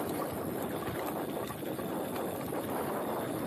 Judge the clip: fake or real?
real